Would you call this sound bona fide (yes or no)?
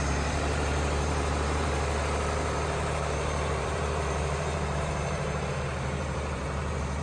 no